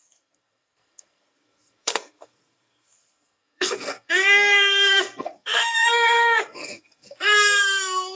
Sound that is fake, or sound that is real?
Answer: fake